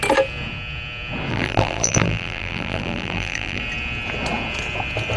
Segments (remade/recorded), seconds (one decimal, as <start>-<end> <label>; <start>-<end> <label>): 0.0-1.3 recorded; 1.3-3.6 remade; 3.6-5.2 recorded